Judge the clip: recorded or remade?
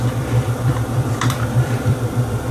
remade